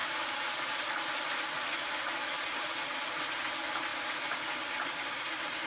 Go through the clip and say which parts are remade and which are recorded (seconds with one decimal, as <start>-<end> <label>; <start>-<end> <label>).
0.0-5.7 recorded